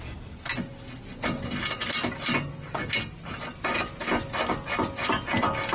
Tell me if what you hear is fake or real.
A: real